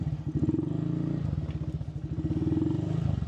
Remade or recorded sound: recorded